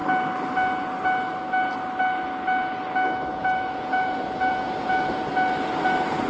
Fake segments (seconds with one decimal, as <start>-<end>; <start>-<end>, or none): 3.3-5.3